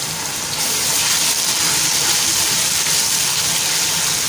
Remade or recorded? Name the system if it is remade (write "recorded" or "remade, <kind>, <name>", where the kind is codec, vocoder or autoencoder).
recorded